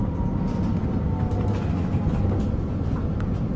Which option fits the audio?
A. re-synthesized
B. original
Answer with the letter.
B